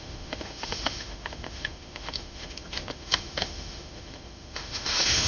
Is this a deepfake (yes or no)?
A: yes